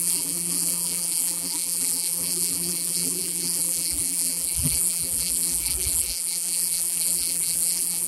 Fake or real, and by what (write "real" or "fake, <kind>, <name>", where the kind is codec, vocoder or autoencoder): fake, vocoder, BigVGAN v2